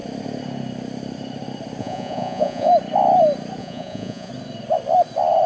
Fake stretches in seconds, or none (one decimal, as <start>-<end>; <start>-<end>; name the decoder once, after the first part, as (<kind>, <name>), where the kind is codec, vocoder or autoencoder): 1.8-2.7 (vocoder, Vocos); 3.6-4.3